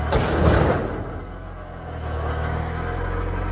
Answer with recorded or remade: recorded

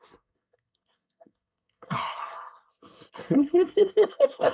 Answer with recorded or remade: remade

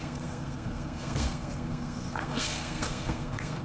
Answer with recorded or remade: remade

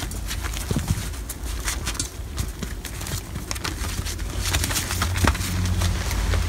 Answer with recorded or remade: recorded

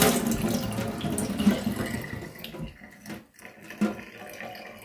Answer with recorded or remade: recorded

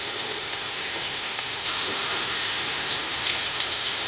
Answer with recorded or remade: remade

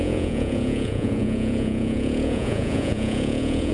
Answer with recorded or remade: remade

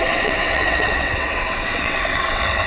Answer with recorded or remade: remade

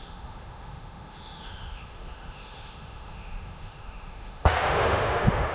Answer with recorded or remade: remade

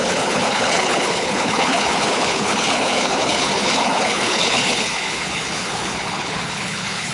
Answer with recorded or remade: remade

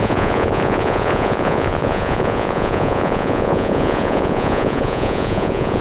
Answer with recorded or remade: remade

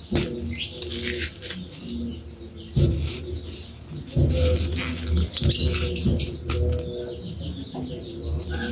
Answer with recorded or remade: recorded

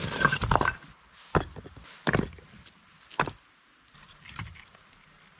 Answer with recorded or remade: recorded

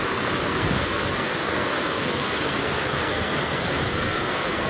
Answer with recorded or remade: remade